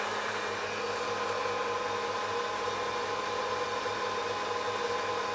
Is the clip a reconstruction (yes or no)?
no